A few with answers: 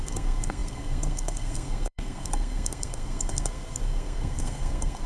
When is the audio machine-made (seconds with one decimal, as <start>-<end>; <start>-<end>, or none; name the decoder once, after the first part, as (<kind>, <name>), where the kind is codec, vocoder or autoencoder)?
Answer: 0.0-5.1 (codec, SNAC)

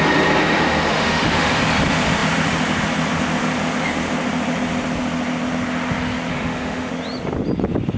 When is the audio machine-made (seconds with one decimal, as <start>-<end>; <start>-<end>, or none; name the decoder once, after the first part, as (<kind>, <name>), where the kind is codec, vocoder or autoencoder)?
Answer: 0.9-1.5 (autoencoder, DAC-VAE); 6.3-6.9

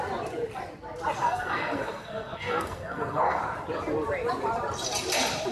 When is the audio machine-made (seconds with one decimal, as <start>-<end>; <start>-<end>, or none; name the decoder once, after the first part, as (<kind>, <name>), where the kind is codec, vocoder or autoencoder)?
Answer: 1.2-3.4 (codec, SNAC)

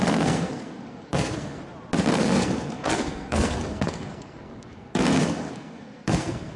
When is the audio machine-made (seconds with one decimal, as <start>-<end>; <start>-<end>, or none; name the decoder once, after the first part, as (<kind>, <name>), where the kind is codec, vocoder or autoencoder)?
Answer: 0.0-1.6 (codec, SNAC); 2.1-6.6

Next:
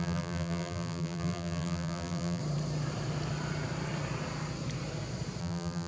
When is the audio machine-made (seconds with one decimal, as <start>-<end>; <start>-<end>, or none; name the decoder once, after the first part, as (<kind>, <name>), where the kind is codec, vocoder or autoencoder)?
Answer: 0.0-2.4 (vocoder, BigVGAN v2); 5.4-5.9

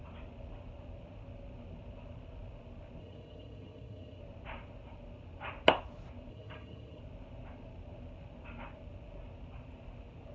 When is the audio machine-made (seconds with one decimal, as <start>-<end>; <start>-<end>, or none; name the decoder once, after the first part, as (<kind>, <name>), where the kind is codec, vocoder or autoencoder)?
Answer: 3.0-4.2 (vocoder, HiFi-GAN); 6.3-7.0

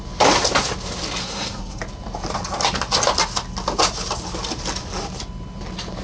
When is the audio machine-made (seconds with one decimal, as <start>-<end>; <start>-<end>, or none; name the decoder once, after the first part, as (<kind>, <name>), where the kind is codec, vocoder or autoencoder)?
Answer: 1.2-1.8 (codec, SNAC)